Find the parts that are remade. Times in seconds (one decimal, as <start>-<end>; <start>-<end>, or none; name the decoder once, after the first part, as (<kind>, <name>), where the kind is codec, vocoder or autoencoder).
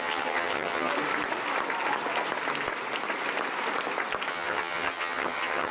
0.0-0.9 (vocoder, HiFi-GAN); 4.3-5.7